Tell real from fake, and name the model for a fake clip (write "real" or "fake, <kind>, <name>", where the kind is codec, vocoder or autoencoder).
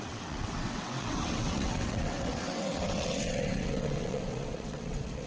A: fake, vocoder, WaveNeXt